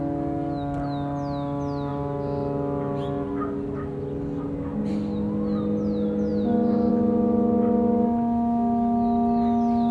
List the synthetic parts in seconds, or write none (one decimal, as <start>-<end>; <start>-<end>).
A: none